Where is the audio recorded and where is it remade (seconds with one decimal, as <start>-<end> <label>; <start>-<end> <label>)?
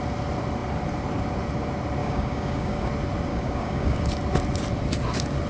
0.0-2.0 recorded; 2.0-2.9 remade; 2.9-3.3 recorded; 3.3-4.1 remade; 4.1-5.5 recorded